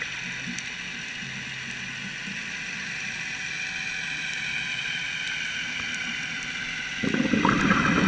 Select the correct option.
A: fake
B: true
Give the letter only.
B